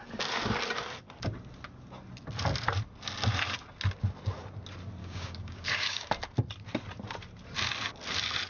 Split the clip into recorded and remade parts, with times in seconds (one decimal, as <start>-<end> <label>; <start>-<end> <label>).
0.0-5.0 recorded; 5.0-6.1 remade; 6.1-8.5 recorded